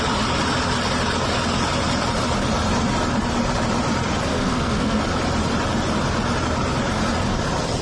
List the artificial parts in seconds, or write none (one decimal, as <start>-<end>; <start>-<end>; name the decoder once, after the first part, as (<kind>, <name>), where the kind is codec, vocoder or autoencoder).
4.3-5.0 (codec, SNAC)